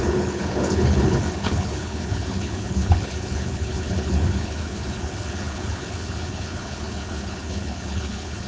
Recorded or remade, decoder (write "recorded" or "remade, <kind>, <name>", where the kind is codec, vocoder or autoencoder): remade, codec, HILCodec